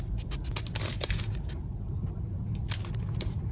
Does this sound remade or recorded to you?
recorded